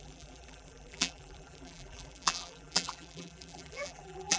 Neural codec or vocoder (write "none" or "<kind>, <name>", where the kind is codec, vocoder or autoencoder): vocoder, BigVGAN v2